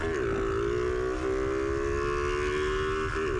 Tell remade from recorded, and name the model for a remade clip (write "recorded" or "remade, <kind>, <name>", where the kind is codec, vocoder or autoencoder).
recorded